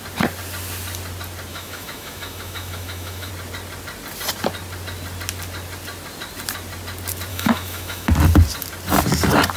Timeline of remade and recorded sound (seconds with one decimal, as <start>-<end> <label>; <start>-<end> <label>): 0.0-1.5 recorded; 1.5-3.3 remade; 3.3-7.3 recorded; 7.3-8.1 remade; 8.1-9.6 recorded